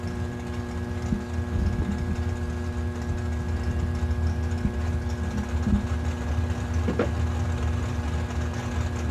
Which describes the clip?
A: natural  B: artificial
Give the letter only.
A